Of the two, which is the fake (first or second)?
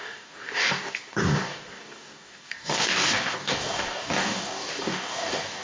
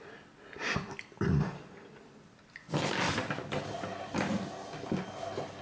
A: first